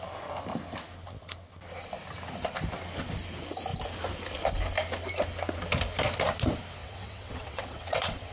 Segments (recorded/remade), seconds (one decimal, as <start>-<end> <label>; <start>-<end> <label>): 0.0-6.8 recorded; 6.8-8.3 remade